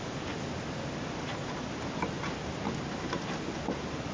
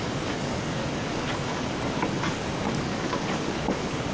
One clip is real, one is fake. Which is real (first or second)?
first